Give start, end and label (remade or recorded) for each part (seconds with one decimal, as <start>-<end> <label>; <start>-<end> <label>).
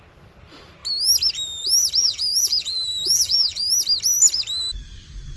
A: 0.0-2.0 recorded; 2.0-3.7 remade; 3.7-5.4 recorded